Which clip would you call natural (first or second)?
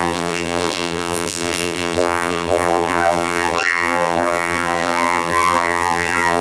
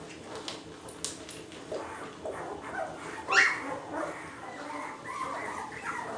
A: second